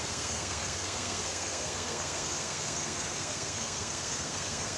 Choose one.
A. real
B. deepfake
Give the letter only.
B